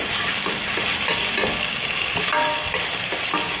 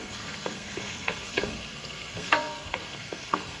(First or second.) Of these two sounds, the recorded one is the first